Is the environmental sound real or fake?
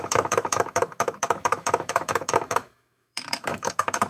fake